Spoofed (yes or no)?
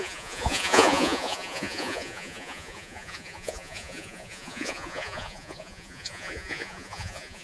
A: yes